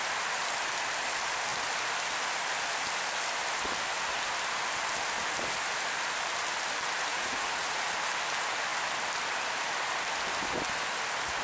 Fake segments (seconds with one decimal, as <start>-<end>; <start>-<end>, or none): 7.1-7.8